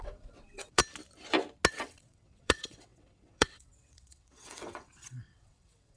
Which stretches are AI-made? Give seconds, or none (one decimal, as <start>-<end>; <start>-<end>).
0.0-0.8; 1.7-6.0